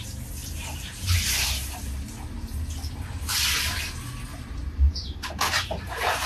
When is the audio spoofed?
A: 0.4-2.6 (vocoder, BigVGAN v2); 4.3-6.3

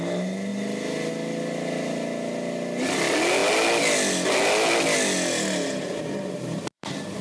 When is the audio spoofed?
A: none